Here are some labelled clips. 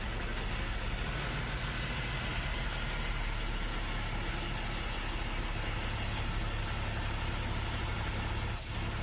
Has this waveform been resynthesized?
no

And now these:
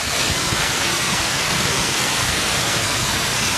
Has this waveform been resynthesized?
yes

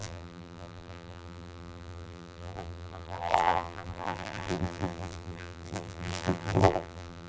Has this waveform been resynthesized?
yes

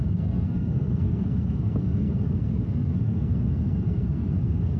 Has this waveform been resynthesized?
yes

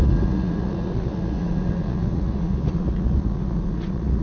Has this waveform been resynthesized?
yes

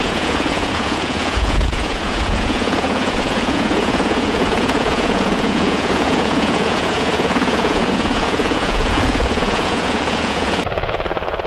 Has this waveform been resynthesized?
yes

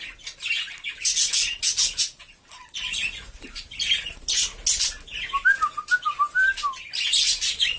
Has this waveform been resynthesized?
no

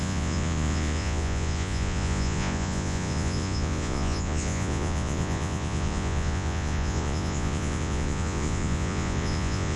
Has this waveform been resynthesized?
yes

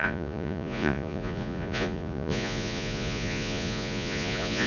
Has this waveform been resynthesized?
yes